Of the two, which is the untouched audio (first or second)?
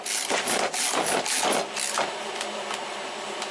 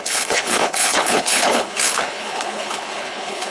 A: first